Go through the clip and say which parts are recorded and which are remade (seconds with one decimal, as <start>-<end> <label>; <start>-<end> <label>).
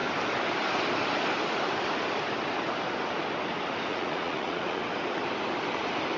0.0-3.9 recorded; 3.9-4.8 remade; 4.8-6.2 recorded